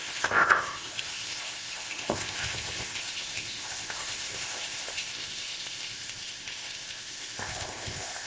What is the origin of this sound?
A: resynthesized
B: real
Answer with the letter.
A